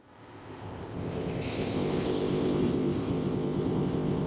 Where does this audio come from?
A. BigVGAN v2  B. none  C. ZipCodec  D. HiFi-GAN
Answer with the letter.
C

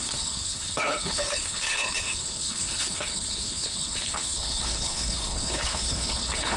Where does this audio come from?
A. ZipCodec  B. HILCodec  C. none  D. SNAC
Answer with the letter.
B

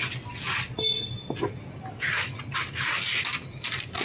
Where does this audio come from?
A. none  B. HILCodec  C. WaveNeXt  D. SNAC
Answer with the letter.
A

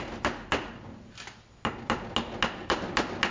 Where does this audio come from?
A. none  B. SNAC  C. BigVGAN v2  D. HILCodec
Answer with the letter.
A